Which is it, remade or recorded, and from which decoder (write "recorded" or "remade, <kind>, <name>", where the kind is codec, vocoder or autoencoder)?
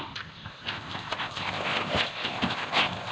remade, codec, ZipCodec